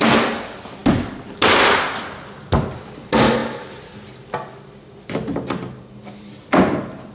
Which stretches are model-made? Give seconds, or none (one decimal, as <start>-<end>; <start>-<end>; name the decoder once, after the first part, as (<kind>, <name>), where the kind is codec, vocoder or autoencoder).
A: none